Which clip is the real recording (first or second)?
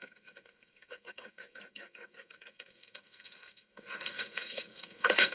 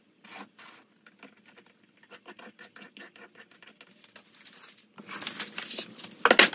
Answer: second